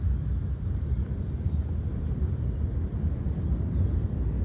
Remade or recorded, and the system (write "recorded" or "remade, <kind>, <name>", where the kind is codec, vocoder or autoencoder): recorded